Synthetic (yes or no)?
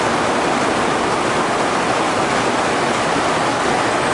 no